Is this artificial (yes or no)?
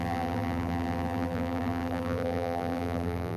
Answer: yes